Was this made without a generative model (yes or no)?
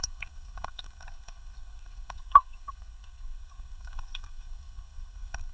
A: no